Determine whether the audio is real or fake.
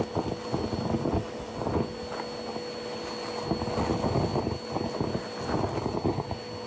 real